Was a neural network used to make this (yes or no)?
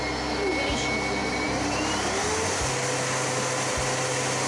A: no